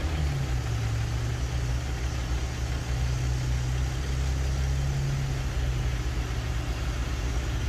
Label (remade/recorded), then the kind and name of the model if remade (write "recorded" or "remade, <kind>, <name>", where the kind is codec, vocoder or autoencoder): recorded